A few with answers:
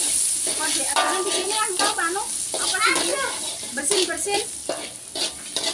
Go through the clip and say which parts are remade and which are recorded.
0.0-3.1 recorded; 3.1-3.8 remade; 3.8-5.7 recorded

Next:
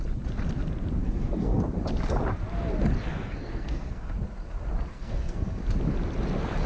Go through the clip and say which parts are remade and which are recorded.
0.0-1.0 recorded; 1.0-1.6 remade; 1.6-3.1 recorded; 3.1-4.1 remade; 4.1-4.9 recorded; 4.9-5.6 remade; 5.6-6.7 recorded

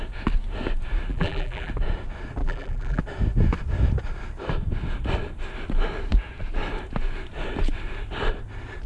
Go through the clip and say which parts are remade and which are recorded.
0.0-1.1 recorded; 1.1-1.7 remade; 1.7-2.4 recorded; 2.4-3.0 remade; 3.0-8.9 recorded

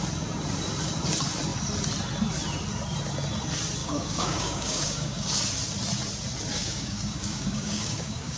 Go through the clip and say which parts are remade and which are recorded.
0.0-3.8 recorded; 3.8-5.4 remade; 5.4-6.5 recorded; 6.5-8.4 remade

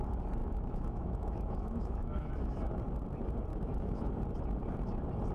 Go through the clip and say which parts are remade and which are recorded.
0.0-0.4 recorded; 0.4-2.6 remade; 2.6-3.5 recorded; 3.5-4.1 remade; 4.1-5.3 recorded